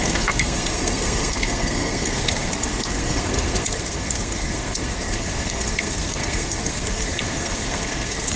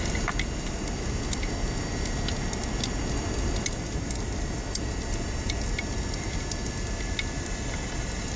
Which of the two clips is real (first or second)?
second